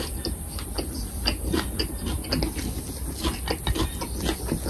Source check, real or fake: real